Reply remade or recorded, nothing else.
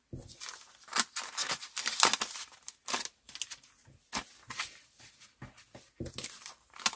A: recorded